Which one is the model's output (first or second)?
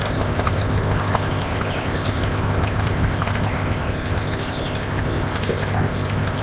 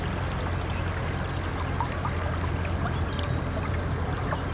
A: first